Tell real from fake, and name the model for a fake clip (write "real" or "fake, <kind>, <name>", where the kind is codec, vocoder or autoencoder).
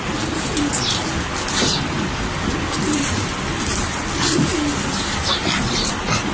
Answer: real